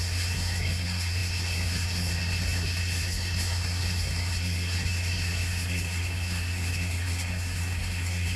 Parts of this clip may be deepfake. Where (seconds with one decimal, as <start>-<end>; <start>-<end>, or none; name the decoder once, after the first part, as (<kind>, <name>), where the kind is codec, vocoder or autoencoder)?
0.0-8.4 (codec, SNAC)